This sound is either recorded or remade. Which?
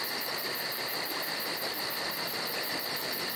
recorded